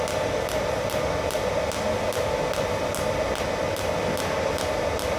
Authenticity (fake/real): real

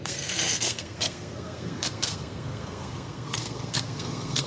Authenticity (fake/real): fake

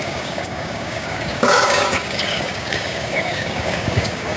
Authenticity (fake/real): fake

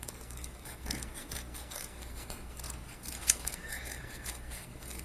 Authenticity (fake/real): fake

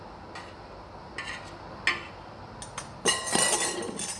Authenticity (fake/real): real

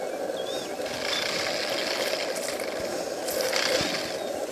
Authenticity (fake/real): real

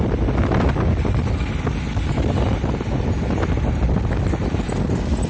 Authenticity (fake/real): real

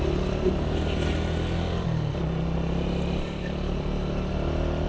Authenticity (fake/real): real